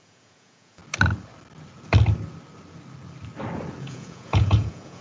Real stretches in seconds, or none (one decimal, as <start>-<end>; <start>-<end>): 0.8-3.8